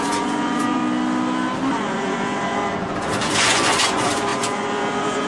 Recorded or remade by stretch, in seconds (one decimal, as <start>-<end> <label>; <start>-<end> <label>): 0.0-0.8 remade; 0.8-1.7 recorded; 1.7-5.3 remade